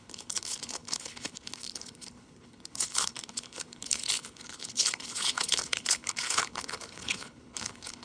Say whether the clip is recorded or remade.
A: remade